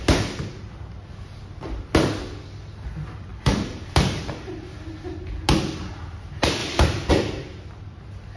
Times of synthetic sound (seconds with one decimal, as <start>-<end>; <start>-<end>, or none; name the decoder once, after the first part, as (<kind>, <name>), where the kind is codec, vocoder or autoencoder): 3.3-5.2 (vocoder, BigVGAN v2)